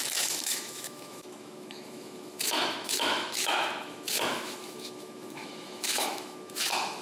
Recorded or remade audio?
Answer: remade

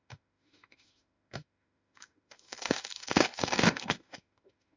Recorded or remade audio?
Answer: remade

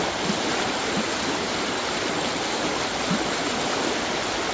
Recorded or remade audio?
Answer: recorded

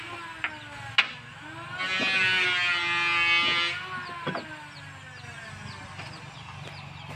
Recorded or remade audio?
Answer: recorded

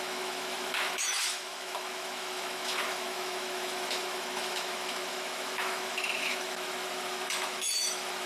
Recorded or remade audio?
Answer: remade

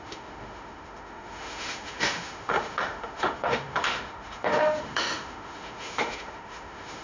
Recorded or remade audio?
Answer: remade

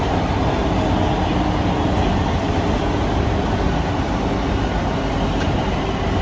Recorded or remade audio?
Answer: recorded